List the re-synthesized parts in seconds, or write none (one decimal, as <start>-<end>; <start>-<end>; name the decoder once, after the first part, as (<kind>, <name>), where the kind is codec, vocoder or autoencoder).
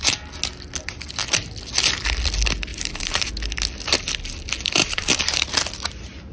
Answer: 2.7-3.3 (vocoder, BigVGAN v2); 4.8-5.5